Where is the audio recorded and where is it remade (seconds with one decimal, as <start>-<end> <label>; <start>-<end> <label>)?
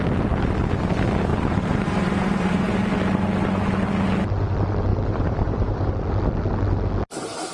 0.0-1.3 recorded; 1.3-2.7 remade; 2.7-4.9 recorded; 4.9-5.9 remade; 5.9-7.5 recorded